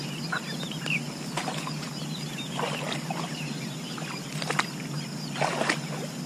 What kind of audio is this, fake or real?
real